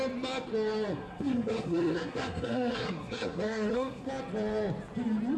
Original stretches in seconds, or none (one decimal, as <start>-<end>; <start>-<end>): 0.0-0.9; 4.1-5.4